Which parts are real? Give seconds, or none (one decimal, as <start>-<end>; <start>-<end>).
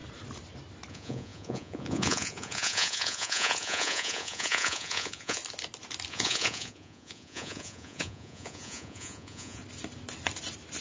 0.0-0.9; 5.4-6.1; 9.6-10.8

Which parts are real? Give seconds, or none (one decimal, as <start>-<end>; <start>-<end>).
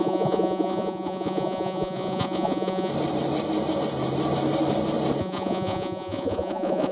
2.9-5.2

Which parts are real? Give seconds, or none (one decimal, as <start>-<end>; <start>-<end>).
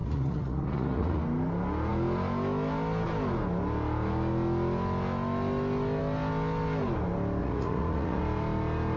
1.2-7.4; 8.2-9.0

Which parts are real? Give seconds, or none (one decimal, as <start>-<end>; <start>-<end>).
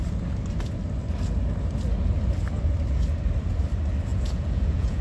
0.0-4.1